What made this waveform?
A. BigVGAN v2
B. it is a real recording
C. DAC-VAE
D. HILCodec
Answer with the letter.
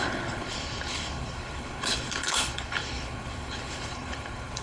D